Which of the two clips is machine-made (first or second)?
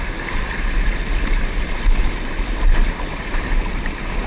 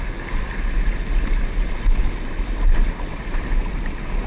first